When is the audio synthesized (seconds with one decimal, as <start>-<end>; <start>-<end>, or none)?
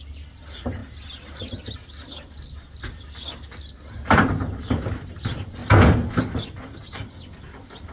0.0-0.8; 5.1-5.6; 6.2-7.9